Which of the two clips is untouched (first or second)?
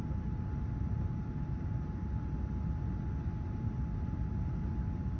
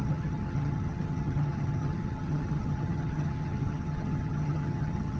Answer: first